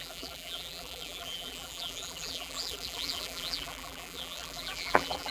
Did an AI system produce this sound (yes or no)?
yes